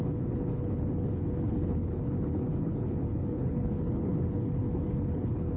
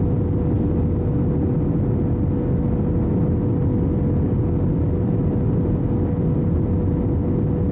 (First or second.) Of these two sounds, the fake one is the first